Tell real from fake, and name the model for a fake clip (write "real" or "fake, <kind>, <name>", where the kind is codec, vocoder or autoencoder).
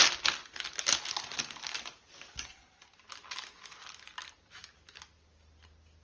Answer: real